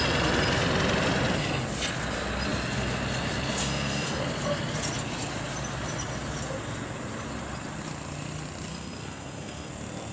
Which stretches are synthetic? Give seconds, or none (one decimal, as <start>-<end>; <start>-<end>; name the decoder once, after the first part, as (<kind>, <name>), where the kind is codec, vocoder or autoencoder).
3.6-4.2 (codec, SNAC); 8.7-9.7